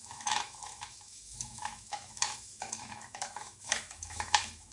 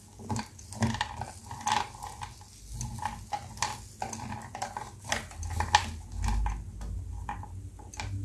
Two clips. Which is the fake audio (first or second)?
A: first